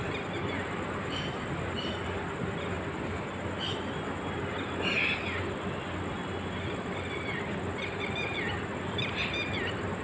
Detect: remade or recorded recorded